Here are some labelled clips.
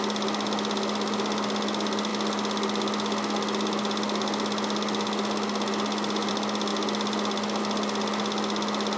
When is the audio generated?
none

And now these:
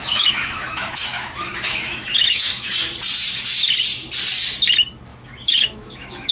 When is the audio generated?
0.0-2.7; 5.1-6.3

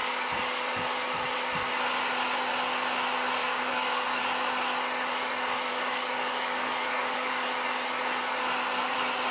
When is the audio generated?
3.4-4.2; 5.7-7.3

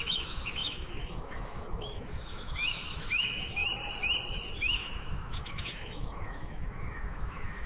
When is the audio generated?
0.0-3.6; 4.6-7.7